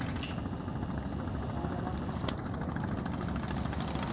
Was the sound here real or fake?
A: real